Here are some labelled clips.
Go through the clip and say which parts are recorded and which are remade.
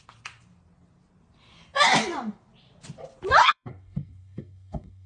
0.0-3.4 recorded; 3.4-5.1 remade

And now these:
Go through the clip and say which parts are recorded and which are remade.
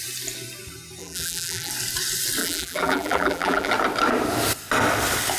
0.0-1.0 recorded; 1.0-1.7 remade; 1.7-2.4 recorded; 2.4-3.7 remade; 3.7-5.4 recorded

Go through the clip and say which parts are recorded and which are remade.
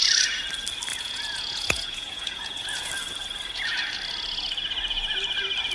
0.0-0.9 recorded; 0.9-2.9 remade; 2.9-5.7 recorded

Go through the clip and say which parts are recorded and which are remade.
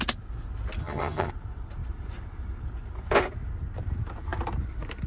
0.0-0.8 recorded; 0.8-1.3 remade; 1.3-5.1 recorded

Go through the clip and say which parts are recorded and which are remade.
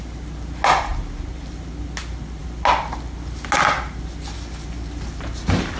0.0-5.8 recorded